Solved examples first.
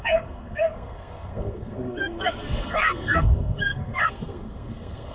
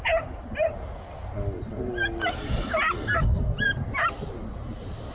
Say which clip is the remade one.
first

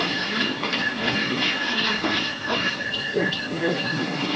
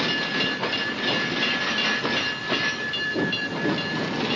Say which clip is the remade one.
first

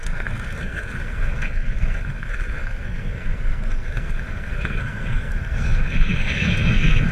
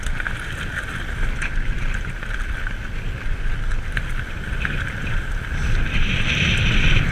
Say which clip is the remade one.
first